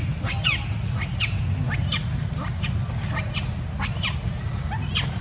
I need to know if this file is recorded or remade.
recorded